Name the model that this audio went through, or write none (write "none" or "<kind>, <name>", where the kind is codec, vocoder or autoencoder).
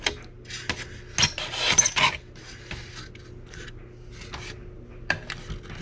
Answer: none